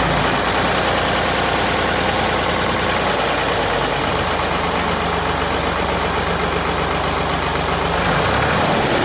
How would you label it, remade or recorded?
recorded